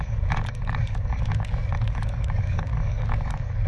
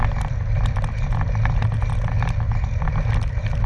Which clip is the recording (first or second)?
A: second